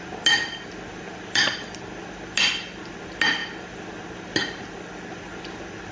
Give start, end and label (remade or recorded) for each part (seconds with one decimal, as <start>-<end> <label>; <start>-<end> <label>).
0.0-5.9 recorded